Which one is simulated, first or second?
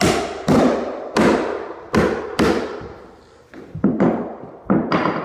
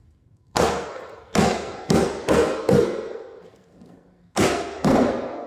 second